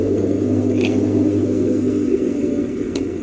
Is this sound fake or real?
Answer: fake